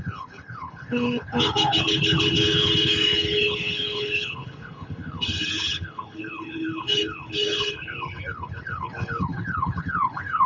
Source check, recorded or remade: remade